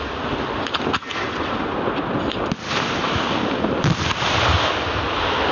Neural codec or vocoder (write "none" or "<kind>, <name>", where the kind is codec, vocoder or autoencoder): none